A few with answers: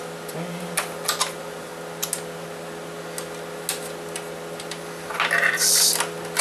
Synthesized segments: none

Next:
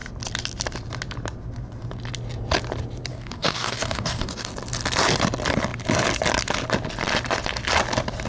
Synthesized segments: 3.1-4.5 (codec, DAC)

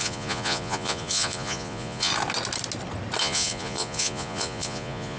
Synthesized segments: 0.0-2.1 (vocoder, Vocos); 3.2-5.2

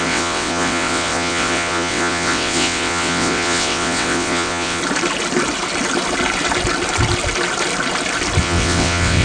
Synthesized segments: 0.0-4.8 (vocoder, WaveNeXt); 8.4-9.2

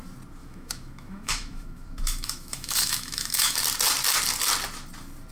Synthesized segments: 0.4-3.6 (autoencoder, DAC-VAE)

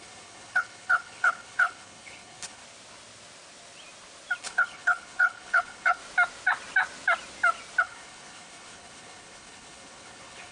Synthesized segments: 0.0-2.6 (codec, HILCodec); 4.4-6.0; 7.8-10.5